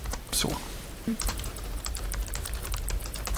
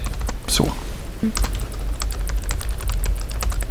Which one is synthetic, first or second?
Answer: first